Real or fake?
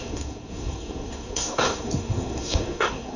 fake